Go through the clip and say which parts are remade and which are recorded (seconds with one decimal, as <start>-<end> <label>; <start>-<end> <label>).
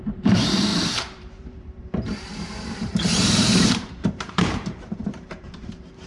0.0-6.1 remade